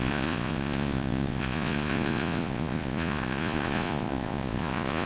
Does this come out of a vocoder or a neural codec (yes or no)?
yes